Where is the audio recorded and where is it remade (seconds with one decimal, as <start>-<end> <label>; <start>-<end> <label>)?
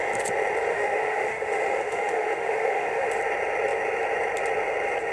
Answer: 0.0-0.7 recorded; 0.7-3.1 remade; 3.1-5.1 recorded